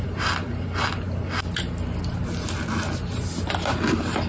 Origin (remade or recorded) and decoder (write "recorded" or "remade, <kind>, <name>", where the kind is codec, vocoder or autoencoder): recorded